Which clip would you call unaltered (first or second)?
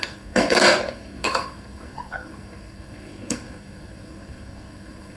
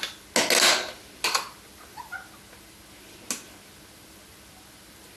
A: second